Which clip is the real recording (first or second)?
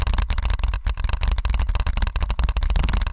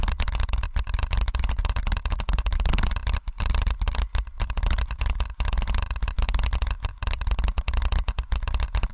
first